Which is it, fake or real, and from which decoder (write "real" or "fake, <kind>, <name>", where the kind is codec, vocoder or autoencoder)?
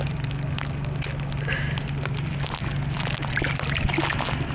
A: real